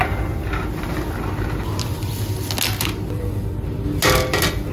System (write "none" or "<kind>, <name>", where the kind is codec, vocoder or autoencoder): none